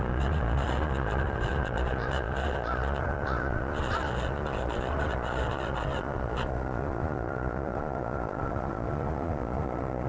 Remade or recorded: remade